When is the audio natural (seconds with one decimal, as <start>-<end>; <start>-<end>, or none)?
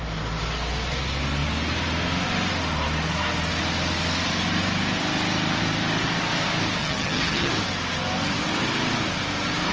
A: 0.0-6.8; 7.5-9.7